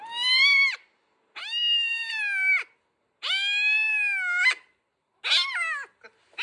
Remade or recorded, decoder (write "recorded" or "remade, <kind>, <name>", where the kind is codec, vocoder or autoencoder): recorded